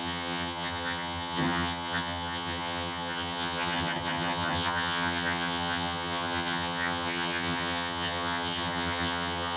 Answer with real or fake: fake